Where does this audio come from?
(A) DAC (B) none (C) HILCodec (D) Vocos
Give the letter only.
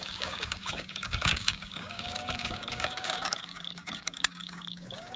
A